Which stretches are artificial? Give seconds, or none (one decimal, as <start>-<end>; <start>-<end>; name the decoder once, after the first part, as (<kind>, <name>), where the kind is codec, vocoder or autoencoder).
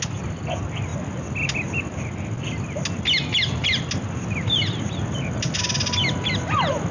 none